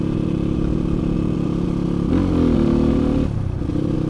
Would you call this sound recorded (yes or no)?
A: yes